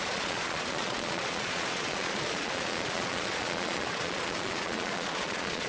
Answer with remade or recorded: remade